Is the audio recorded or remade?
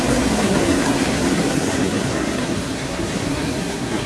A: remade